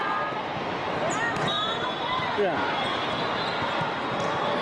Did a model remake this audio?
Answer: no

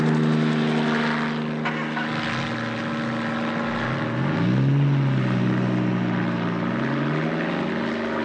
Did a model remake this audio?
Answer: no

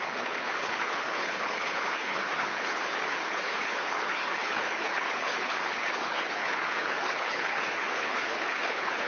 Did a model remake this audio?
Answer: yes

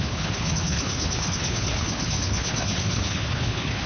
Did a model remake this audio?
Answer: yes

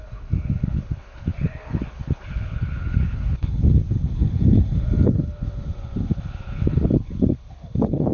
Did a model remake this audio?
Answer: yes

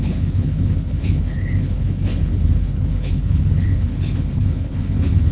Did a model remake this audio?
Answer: yes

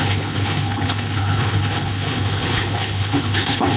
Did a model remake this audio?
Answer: yes